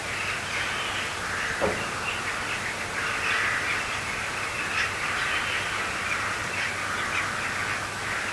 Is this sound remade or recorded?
recorded